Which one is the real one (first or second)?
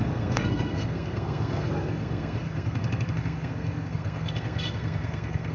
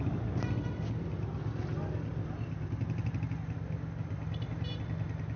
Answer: second